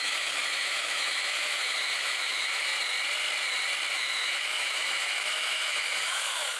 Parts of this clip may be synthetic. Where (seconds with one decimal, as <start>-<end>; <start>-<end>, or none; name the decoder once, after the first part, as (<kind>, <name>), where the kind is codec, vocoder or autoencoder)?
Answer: 0.0-2.7 (autoencoder, DAC-VAE); 3.9-6.6